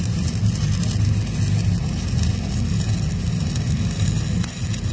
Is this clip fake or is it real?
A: real